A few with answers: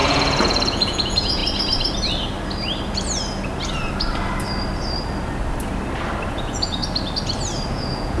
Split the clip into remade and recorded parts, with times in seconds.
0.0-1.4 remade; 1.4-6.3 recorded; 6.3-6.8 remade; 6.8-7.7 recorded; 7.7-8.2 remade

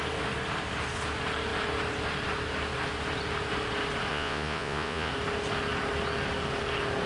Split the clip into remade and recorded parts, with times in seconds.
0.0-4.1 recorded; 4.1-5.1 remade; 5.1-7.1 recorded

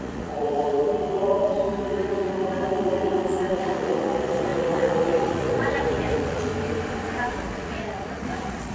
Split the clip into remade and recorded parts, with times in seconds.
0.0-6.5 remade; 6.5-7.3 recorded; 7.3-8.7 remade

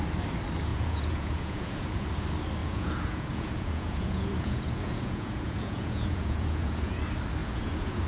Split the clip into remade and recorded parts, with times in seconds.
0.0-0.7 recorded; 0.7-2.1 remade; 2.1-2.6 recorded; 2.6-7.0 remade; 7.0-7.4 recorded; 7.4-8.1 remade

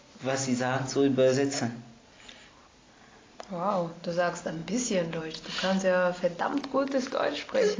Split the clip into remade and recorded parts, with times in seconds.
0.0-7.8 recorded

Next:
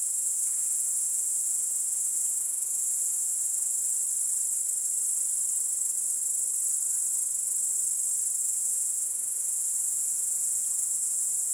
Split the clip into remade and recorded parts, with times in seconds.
0.0-3.8 remade; 3.8-8.4 recorded; 8.4-11.5 remade

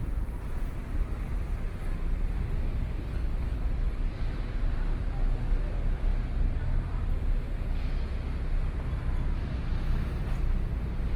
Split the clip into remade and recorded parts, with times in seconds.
0.0-0.8 remade; 0.8-11.2 recorded